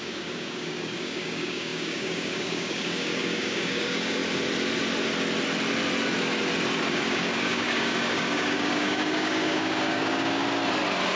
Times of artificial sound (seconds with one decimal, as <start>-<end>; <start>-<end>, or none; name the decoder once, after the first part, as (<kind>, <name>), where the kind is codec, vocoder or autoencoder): 0.0-4.2 (codec, DAC); 6.9-10.4